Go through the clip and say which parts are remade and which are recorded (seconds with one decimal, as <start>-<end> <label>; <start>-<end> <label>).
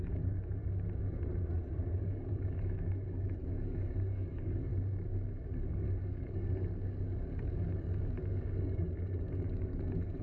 0.0-0.6 remade; 0.6-1.9 recorded; 1.9-4.7 remade; 4.7-5.4 recorded; 5.4-10.2 remade